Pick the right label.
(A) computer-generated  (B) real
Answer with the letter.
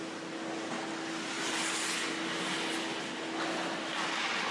B